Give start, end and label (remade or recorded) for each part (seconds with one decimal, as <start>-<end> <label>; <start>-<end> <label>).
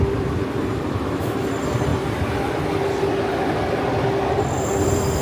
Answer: 0.0-1.9 remade; 1.9-4.6 recorded; 4.6-5.2 remade